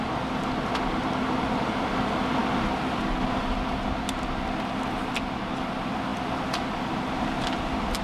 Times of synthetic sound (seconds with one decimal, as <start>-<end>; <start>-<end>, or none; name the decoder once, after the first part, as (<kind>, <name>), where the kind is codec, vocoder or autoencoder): none